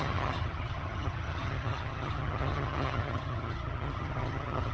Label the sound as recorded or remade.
remade